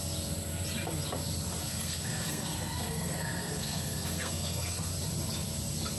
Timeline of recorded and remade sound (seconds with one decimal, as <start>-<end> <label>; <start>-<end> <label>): 0.0-1.6 recorded; 1.6-4.9 remade; 4.9-6.0 recorded